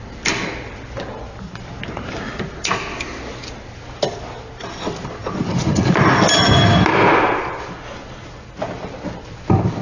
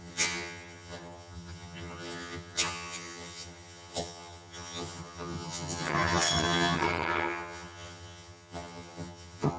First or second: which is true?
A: first